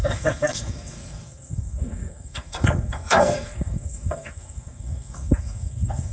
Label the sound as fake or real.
fake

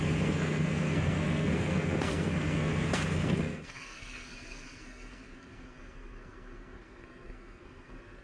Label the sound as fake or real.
fake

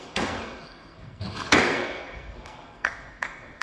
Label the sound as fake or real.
fake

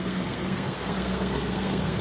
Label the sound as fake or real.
fake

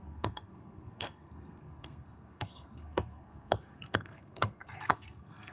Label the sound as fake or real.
fake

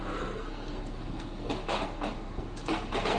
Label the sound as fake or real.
fake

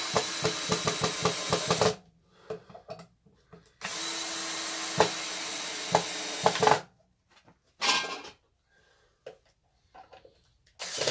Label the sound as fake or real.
real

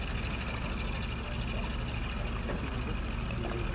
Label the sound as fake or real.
real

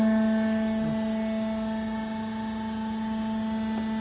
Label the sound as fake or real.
real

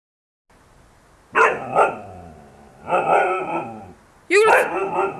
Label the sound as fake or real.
real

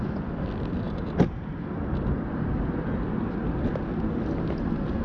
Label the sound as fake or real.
real